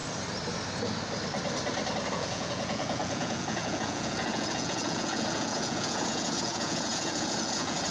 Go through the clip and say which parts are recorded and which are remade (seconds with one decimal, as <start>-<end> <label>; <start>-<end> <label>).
0.0-2.1 recorded; 2.1-7.9 remade